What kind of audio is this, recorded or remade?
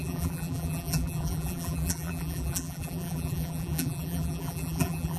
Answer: remade